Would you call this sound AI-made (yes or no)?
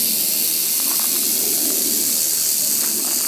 no